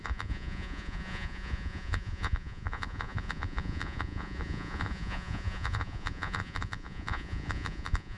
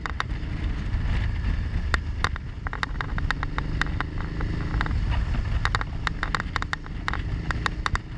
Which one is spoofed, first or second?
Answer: first